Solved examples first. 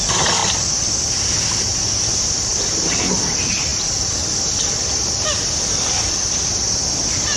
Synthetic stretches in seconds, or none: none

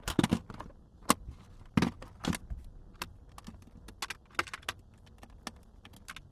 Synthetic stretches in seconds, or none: none

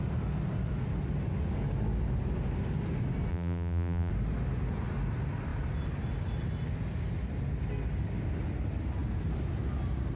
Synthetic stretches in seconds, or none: 3.3-4.1 (vocoder, BigVGAN v2)

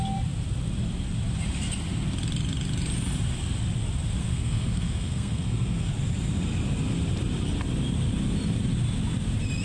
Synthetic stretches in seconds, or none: 4.2-5.9 (codec, SNAC)